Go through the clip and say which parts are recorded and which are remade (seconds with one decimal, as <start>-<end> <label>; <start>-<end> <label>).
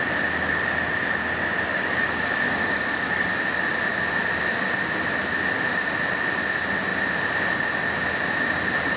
0.0-1.7 recorded; 1.7-3.3 remade; 3.3-9.0 recorded